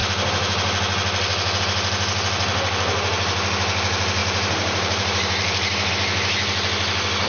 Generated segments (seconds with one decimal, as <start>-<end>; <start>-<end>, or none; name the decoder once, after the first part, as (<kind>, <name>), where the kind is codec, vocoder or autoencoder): 4.2-5.9 (vocoder, BigVGAN v2)